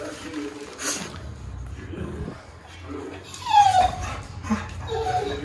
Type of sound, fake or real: real